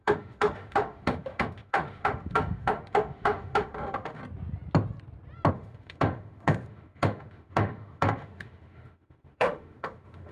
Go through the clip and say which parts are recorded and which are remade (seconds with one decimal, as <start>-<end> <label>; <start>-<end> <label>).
0.0-4.2 remade; 4.2-5.5 recorded; 5.5-10.3 remade